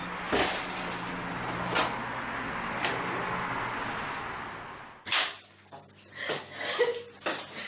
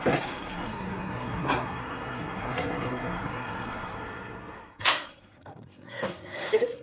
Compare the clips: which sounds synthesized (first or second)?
second